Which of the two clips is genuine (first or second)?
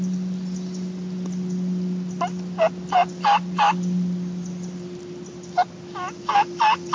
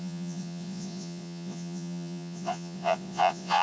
first